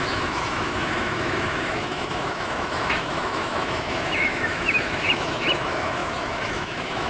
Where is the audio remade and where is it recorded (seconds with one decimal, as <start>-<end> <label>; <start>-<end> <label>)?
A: 0.0-7.1 remade